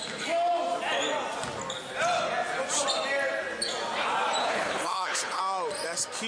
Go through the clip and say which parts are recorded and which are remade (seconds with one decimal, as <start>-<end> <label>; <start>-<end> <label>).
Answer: 0.0-4.4 recorded; 4.4-5.4 remade; 5.4-6.3 recorded